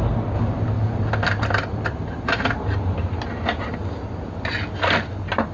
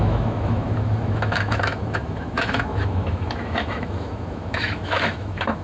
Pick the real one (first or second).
first